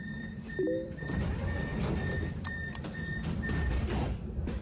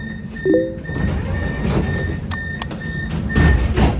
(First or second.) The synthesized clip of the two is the first